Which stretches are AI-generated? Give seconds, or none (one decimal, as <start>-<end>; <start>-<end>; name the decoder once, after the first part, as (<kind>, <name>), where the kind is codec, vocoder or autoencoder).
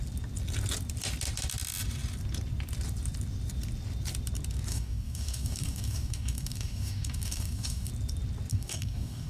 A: 4.7-7.9 (codec, DAC); 8.5-9.3